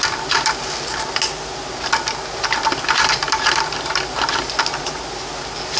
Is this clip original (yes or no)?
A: yes